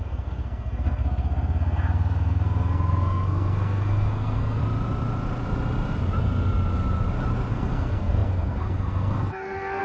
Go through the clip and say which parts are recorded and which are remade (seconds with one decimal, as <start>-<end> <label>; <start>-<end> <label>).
0.0-4.6 remade; 4.6-7.5 recorded; 7.5-9.8 remade